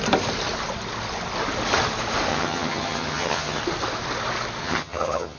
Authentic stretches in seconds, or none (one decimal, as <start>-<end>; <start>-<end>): 0.0-2.3; 3.6-4.6